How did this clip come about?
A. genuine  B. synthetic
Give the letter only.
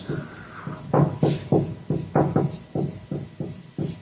A